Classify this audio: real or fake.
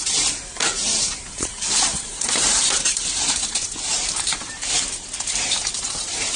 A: fake